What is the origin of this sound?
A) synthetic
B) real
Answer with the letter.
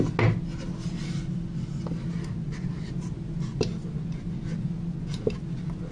B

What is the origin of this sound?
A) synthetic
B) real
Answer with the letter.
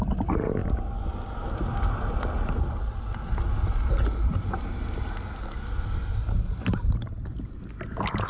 B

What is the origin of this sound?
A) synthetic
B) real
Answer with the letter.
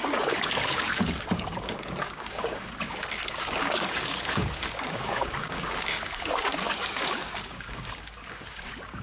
A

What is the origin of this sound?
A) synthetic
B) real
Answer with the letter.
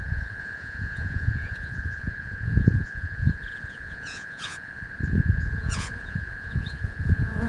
A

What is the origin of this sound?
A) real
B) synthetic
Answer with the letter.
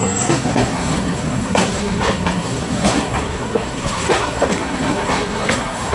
B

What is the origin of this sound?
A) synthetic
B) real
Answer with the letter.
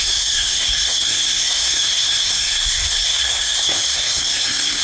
A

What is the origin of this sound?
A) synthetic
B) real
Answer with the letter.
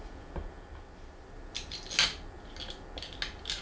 B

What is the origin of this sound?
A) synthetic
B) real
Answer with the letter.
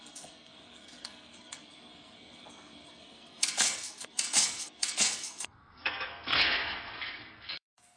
A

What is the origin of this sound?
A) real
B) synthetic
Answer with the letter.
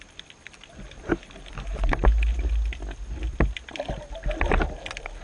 A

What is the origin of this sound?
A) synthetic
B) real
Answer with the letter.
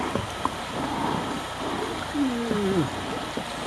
B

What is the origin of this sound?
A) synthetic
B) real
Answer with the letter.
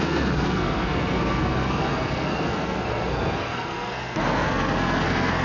A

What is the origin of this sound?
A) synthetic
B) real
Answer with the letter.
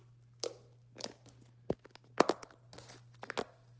B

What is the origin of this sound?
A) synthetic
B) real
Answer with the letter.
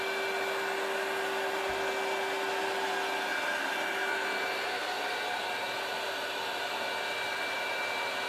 B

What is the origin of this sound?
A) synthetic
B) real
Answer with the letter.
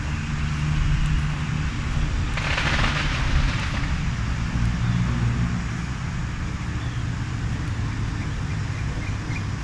B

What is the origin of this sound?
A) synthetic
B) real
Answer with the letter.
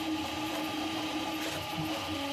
B